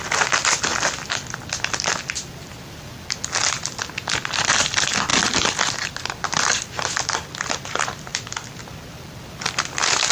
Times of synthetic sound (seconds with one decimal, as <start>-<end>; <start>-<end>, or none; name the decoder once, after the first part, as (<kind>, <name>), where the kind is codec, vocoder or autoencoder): 5.1-7.4 (vocoder, BigVGAN v2); 8.1-8.6